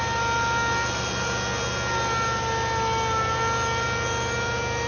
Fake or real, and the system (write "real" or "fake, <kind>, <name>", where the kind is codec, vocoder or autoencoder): real